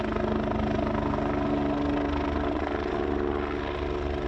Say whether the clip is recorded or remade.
recorded